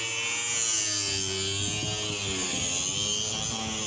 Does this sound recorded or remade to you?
recorded